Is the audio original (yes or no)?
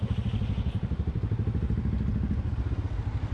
yes